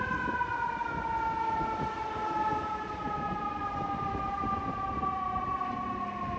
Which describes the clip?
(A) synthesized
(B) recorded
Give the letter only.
B